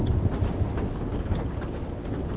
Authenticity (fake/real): real